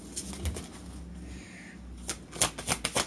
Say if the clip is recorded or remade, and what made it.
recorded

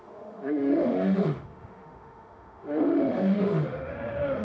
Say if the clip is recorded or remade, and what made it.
remade, autoencoder, DAC-VAE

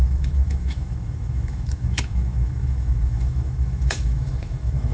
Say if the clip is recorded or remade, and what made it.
remade, autoencoder, DAC-VAE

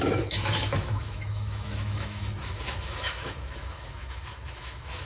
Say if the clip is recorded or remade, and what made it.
remade, autoencoder, DAC-VAE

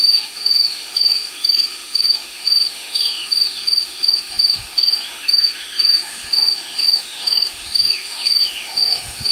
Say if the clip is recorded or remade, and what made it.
remade, autoencoder, DAC-VAE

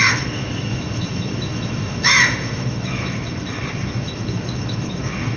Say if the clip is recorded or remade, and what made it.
remade, autoencoder, DAC-VAE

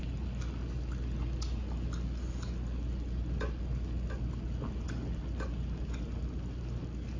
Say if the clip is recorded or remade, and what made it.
recorded